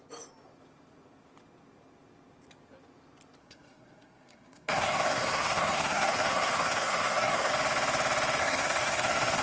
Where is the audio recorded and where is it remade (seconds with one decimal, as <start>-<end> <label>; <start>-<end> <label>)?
0.0-3.4 recorded; 3.4-7.5 remade; 7.5-8.4 recorded; 8.4-9.4 remade